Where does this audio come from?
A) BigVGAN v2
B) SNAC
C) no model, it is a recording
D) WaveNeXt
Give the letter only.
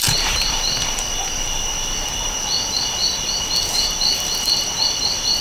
A